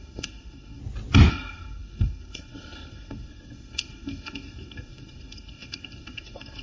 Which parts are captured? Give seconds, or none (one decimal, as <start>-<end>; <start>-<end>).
0.8-1.3